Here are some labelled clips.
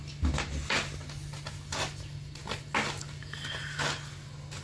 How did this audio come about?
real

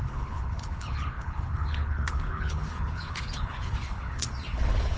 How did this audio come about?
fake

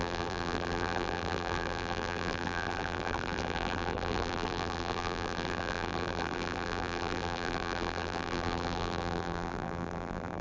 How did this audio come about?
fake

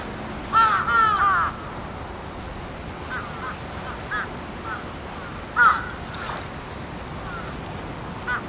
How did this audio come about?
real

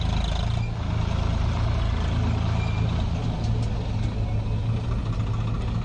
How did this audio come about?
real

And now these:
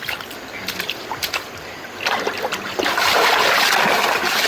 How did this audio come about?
real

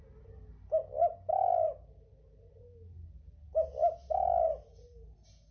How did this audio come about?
real